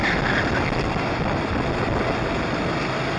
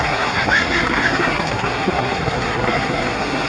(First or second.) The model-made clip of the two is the second